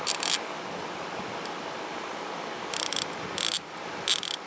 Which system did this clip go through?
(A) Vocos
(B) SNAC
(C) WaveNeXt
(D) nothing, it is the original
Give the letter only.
D